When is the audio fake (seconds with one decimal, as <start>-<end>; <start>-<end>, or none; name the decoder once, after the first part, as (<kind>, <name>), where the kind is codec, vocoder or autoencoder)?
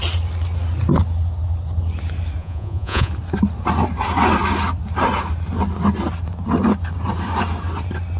2.4-3.1 (vocoder, Vocos)